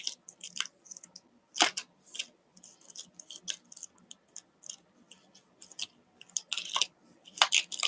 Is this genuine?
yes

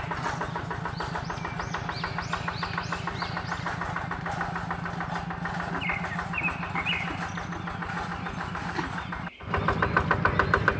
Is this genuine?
yes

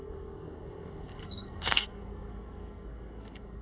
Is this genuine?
no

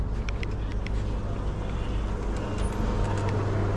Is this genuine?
yes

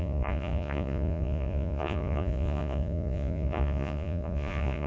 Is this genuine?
no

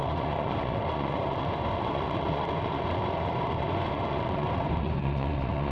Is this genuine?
no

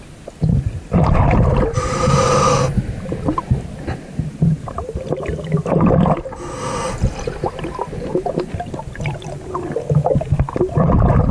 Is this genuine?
yes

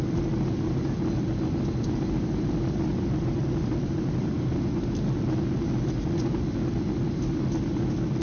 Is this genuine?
yes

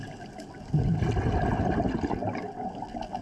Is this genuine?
yes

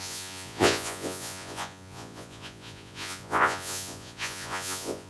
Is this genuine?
no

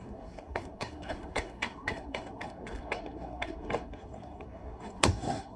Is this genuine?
no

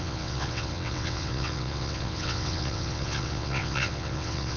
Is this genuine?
no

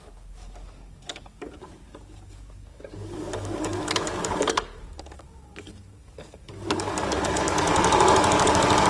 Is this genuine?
no